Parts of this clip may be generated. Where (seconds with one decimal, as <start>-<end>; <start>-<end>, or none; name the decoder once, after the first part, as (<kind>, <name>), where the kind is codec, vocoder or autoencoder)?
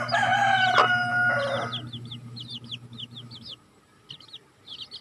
none